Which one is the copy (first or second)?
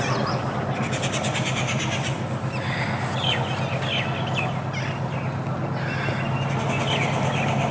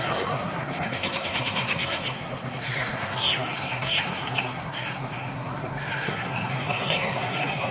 second